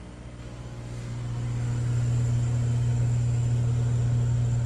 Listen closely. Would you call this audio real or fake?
real